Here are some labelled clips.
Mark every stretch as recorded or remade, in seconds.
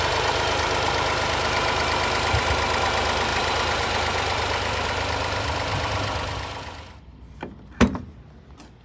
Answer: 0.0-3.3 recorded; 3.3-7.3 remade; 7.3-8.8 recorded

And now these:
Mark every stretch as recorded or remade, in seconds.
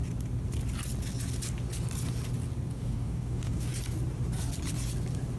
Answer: 0.0-2.7 recorded; 2.7-3.7 remade; 3.7-5.4 recorded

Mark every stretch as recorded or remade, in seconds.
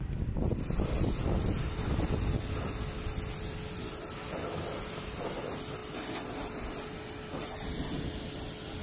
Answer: 0.0-8.8 recorded